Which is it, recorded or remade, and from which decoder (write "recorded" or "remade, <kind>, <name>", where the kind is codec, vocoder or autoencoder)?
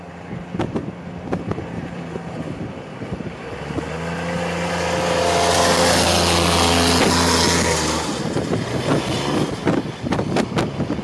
recorded